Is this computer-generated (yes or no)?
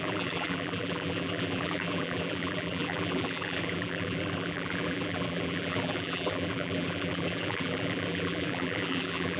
yes